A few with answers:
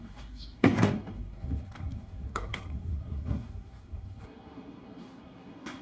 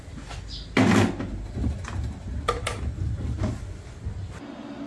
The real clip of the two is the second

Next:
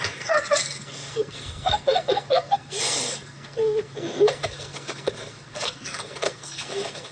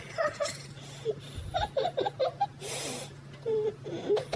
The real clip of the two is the second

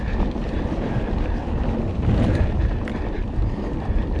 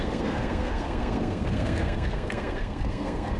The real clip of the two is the first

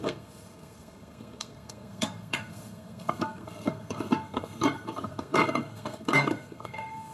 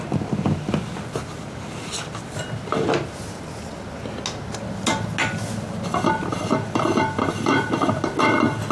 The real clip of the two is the second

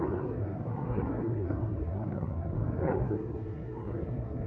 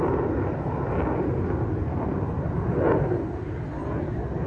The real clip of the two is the second